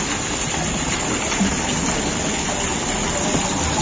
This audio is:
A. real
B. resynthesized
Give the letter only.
A